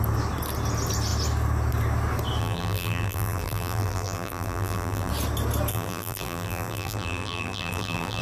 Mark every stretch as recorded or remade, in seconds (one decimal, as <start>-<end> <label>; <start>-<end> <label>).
0.0-2.4 recorded; 2.4-5.1 remade; 5.1-5.7 recorded; 5.7-8.2 remade